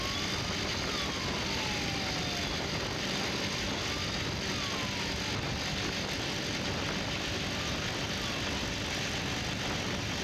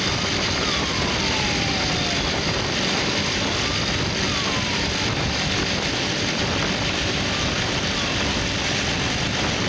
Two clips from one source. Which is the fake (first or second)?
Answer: second